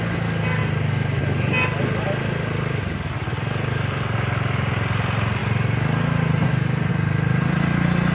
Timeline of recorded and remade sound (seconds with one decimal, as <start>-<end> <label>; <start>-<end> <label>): 0.0-8.1 recorded